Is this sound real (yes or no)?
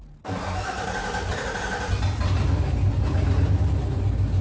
yes